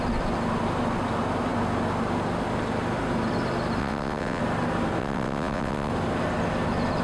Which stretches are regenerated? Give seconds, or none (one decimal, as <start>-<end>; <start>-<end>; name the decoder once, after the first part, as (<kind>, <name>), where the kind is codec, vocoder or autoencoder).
3.8-4.4 (vocoder, WaveNeXt); 5.0-5.9